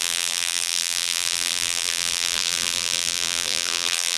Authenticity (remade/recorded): remade